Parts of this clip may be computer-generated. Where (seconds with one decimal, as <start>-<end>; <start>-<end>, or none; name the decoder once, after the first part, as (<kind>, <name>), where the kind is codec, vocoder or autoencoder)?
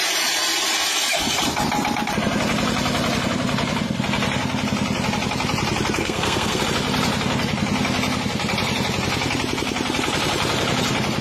6.0-6.6 (codec, SNAC)